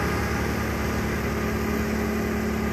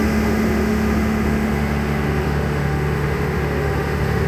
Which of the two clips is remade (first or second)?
second